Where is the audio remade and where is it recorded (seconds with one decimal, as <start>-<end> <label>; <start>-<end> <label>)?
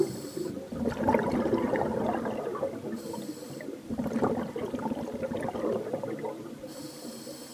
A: 0.0-7.5 recorded